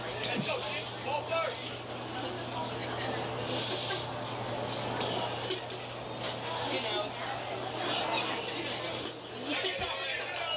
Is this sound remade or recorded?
recorded